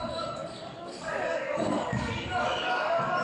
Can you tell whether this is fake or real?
fake